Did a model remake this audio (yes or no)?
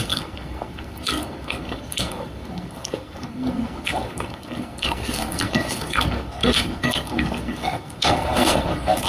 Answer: yes